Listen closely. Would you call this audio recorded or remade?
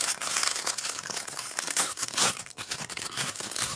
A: remade